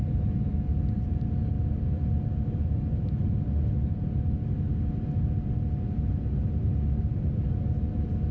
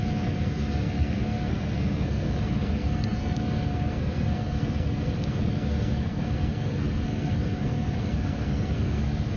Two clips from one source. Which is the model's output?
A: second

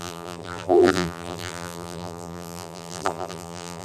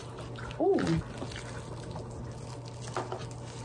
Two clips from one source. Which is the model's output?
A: first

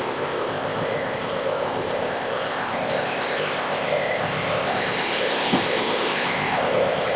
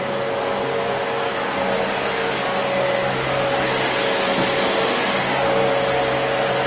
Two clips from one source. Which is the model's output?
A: first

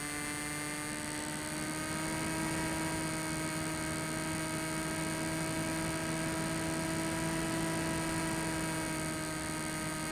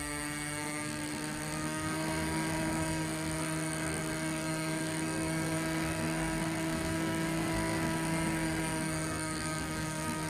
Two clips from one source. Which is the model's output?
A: second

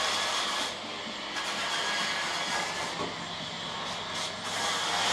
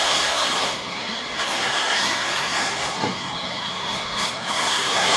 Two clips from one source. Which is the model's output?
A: second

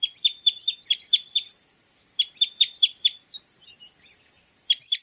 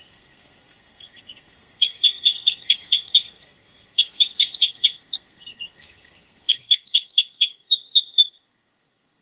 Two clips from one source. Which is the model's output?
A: second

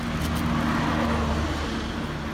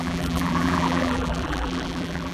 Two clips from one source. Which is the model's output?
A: second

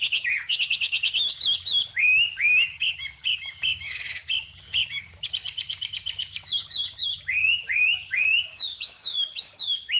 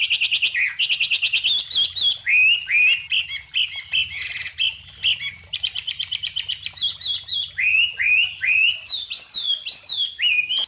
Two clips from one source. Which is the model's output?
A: first